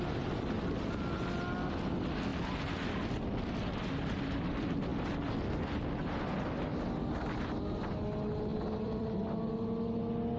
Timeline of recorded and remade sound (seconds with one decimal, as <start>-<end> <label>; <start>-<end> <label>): 0.0-8.5 recorded; 8.5-9.1 remade; 9.1-10.4 recorded